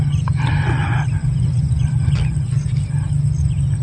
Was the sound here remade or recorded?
recorded